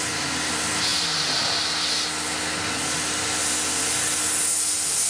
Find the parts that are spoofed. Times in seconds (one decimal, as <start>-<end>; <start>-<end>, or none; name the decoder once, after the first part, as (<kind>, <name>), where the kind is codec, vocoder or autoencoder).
none

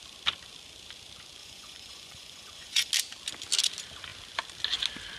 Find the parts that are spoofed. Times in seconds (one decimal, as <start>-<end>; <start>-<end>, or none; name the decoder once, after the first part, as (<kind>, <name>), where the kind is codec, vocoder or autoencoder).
1.4-2.9 (vocoder, Vocos)

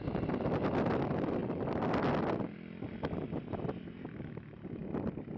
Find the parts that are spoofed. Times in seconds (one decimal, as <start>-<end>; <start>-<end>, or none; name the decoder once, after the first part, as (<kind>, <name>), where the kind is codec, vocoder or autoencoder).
none

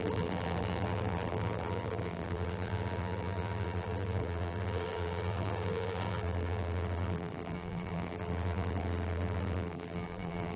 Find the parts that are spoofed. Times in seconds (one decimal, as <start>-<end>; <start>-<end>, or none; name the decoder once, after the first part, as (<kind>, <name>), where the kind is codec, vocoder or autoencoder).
0.0-10.6 (vocoder, BigVGAN v2)

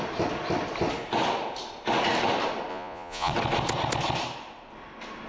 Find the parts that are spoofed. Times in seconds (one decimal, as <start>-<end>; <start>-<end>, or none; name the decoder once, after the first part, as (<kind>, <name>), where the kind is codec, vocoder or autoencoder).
2.7-3.3 (vocoder, Vocos)

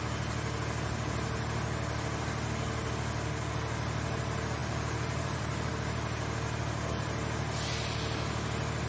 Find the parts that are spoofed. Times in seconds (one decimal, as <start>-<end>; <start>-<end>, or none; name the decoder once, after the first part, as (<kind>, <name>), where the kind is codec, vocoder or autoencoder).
4.6-5.7 (vocoder, BigVGAN v2)